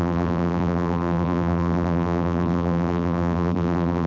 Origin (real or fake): fake